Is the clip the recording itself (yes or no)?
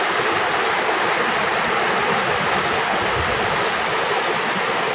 yes